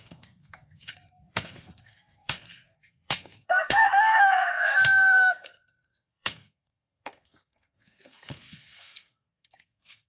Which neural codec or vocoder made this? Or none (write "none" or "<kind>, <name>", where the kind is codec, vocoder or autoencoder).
codec, SNAC